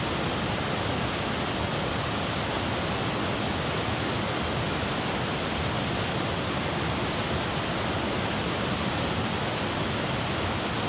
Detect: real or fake real